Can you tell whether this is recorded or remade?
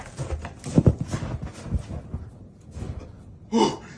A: recorded